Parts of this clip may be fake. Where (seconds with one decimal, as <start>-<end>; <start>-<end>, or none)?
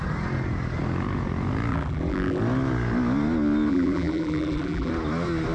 1.7-2.4; 3.7-4.9